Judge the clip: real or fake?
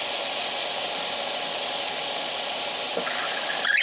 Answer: real